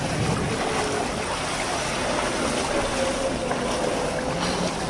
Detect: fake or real real